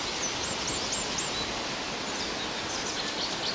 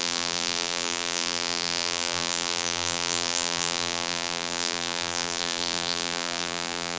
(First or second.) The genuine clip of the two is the first